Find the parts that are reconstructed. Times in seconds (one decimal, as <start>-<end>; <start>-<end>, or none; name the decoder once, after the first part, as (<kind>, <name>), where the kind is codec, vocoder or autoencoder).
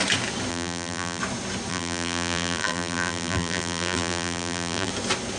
0.5-1.2 (vocoder, BigVGAN v2); 1.7-4.9